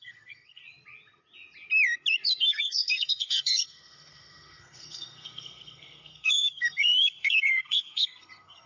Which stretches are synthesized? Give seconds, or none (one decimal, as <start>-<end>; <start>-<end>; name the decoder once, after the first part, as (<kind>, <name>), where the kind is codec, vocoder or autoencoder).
0.0-0.6 (codec, SNAC); 2.4-8.7